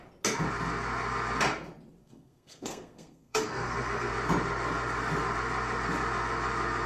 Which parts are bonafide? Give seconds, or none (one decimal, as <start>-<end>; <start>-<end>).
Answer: 0.0-2.0; 4.1-6.9

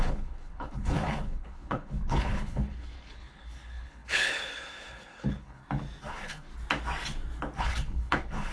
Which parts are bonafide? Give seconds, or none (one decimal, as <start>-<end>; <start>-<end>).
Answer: 5.6-6.1; 6.5-7.6

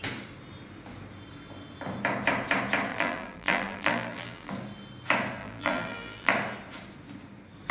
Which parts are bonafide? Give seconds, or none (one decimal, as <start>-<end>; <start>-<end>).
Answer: 0.0-2.9; 4.5-5.4; 6.3-7.7

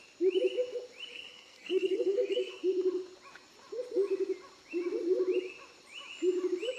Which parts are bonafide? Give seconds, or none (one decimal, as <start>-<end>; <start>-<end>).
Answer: 0.0-1.1; 2.6-6.8

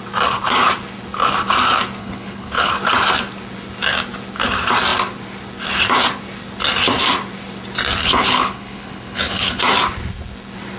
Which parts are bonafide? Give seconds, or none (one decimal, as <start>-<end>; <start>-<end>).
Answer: 0.0-2.0; 2.7-8.0; 9.6-10.8

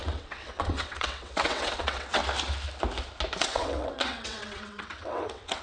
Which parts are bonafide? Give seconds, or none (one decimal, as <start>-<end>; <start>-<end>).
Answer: 2.2-3.4

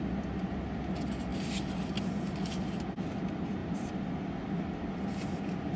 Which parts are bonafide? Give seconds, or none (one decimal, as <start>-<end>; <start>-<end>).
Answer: 0.0-5.8

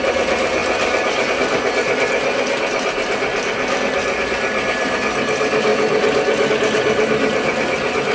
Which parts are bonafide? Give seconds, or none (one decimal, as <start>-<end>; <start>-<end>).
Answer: 0.0-0.6; 1.3-5.7; 6.5-8.1